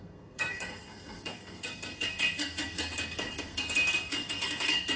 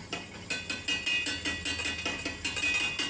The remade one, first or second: first